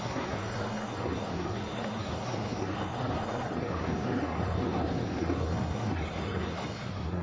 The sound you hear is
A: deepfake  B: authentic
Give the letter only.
A